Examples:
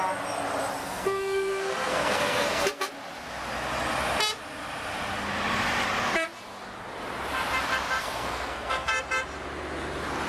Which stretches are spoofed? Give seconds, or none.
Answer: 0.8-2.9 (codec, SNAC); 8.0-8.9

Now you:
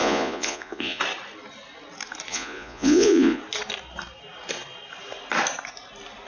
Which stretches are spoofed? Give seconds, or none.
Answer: 0.0-1.0 (vocoder, Vocos); 2.3-3.4

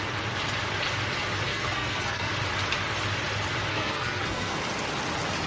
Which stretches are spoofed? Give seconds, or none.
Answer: 1.5-2.3 (codec, SNAC); 3.7-4.6

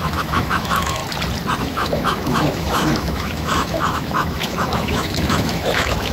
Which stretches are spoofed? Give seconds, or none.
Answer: 0.0-1.0 (autoencoder, DAC-VAE); 1.6-6.1

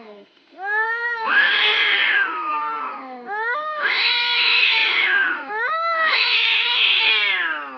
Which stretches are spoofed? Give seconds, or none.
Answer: 0.0-7.1 (autoencoder, DAC-VAE)